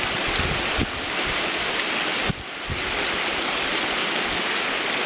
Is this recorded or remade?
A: recorded